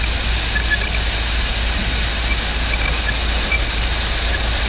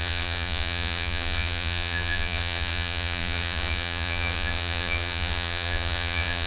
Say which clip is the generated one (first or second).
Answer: second